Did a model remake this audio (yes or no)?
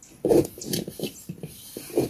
no